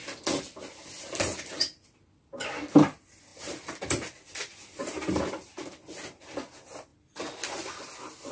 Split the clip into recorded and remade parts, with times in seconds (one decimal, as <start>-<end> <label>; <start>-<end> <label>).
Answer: 0.0-8.3 recorded